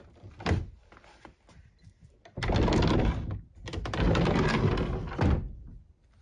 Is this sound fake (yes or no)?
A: no